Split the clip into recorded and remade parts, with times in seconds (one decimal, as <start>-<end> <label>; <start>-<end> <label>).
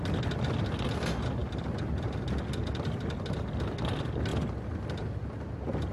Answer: 0.0-5.9 recorded